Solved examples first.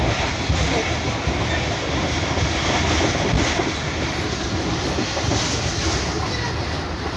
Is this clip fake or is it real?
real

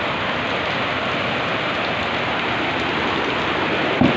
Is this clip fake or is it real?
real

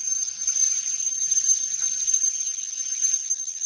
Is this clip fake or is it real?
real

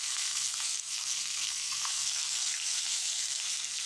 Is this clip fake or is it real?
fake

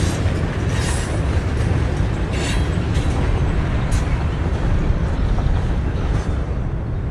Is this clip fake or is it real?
real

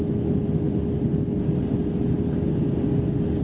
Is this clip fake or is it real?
real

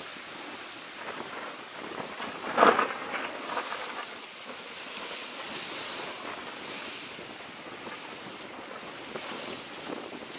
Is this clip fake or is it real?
real